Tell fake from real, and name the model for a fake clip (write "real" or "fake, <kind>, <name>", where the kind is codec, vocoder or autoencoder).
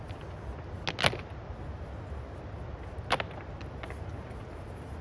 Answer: real